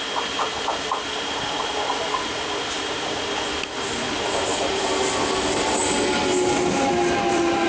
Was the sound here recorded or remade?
recorded